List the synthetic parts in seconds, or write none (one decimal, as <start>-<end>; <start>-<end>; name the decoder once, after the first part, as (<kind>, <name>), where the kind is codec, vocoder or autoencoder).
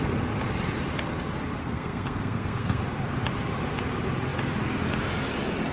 1.6-2.8 (codec, SNAC)